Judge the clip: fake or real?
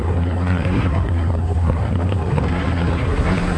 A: fake